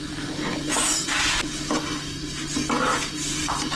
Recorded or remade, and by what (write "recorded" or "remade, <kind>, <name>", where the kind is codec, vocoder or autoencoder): recorded